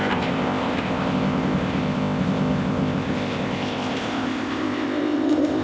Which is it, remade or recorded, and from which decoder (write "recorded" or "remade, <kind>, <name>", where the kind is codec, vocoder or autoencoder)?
remade, codec, ZipCodec